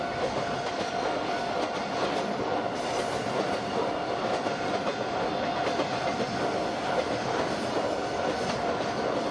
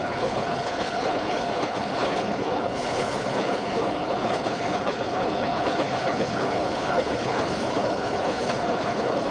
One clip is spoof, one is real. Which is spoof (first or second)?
second